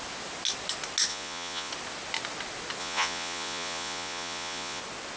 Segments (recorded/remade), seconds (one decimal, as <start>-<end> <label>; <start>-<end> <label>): 0.0-1.1 recorded; 1.1-1.7 remade; 1.7-2.8 recorded; 2.8-4.8 remade; 4.8-5.2 recorded